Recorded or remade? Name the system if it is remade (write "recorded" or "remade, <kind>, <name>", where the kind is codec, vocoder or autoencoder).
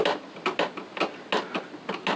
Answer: recorded